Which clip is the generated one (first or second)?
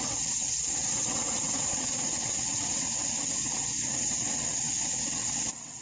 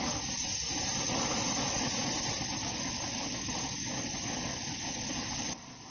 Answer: first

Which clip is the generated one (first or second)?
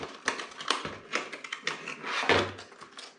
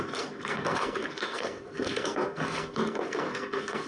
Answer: second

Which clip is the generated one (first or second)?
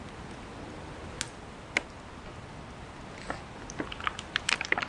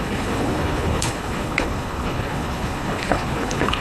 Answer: second